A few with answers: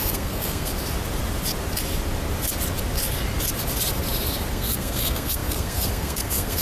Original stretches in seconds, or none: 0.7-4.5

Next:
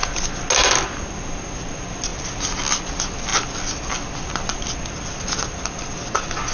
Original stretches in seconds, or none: 0.0-6.5

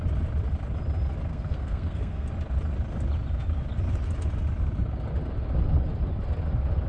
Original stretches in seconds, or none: 0.0-1.3; 2.3-6.9

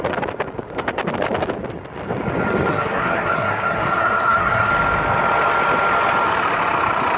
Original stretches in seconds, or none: 0.0-2.7; 4.7-7.2

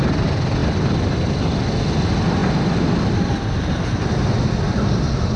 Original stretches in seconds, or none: 0.0-5.4

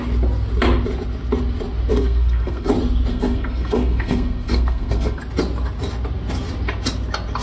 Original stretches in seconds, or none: 0.0-1.9; 2.7-3.1; 5.2-7.4

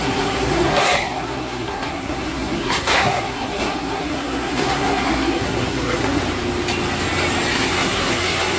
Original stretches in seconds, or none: 6.2-7.5

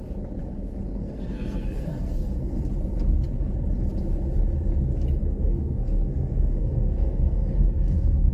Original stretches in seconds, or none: 0.0-0.4; 2.6-5.2